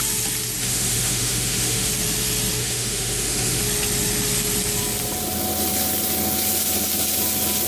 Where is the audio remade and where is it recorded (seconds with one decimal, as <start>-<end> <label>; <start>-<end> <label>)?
0.0-0.6 recorded; 0.6-1.9 remade; 1.9-2.6 recorded; 2.6-3.6 remade; 3.6-7.7 recorded